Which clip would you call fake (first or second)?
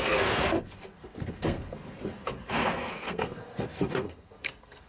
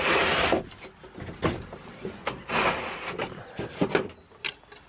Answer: first